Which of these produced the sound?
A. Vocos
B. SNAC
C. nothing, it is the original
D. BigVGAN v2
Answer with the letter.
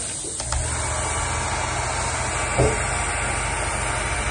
C